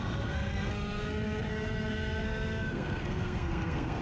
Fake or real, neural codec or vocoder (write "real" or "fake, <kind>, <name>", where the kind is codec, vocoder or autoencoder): fake, codec, SNAC